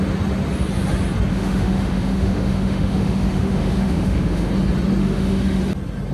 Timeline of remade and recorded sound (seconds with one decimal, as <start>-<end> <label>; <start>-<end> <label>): 0.0-1.3 recorded; 1.3-4.5 remade; 4.5-5.0 recorded; 5.0-5.6 remade; 5.6-6.1 recorded